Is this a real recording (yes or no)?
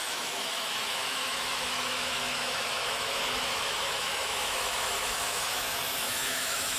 no